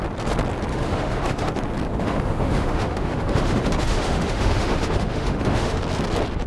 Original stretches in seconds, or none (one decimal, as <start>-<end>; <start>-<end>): 0.0-0.7; 1.5-1.9; 5.8-6.5